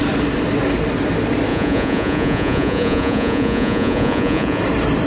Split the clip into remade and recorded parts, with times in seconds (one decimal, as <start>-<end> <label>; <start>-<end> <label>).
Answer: 0.0-1.5 recorded; 1.5-4.6 remade; 4.6-5.1 recorded